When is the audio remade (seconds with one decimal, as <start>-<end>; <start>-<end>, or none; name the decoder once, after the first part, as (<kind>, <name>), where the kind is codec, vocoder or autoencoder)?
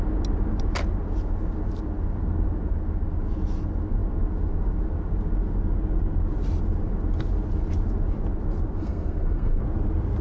8.8-9.6 (codec, SNAC)